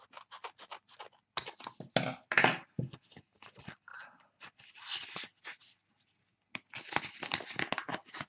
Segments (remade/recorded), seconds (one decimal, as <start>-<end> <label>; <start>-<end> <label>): 0.0-8.3 recorded